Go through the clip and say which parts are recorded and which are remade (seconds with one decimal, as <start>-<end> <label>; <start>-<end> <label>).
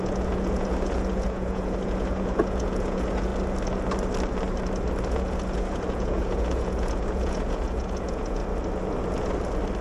0.0-3.3 remade; 3.3-5.1 recorded; 5.1-8.4 remade; 8.4-9.8 recorded